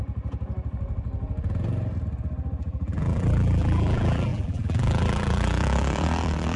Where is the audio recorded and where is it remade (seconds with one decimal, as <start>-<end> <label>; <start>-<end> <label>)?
0.0-2.6 recorded; 2.6-6.6 remade